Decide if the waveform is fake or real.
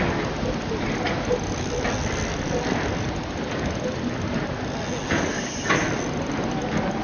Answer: real